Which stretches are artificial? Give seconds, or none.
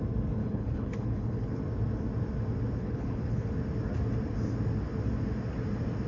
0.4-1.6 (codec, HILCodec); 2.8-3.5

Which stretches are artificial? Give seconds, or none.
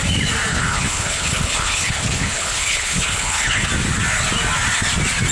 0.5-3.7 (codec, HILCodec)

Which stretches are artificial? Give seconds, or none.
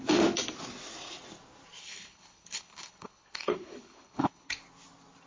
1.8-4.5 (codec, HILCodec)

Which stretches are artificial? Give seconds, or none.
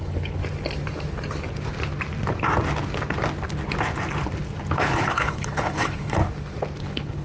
0.0-0.4 (codec, HILCodec); 4.7-6.2; 6.8-7.2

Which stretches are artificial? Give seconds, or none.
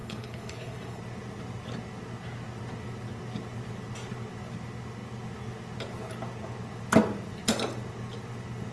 0.0-1.0 (codec, HILCodec)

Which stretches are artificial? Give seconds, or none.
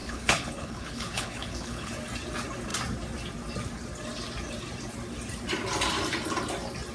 0.0-1.9 (codec, HILCodec)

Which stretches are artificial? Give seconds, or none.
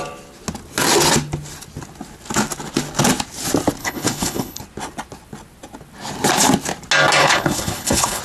3.8-4.6 (codec, HILCodec); 7.2-8.2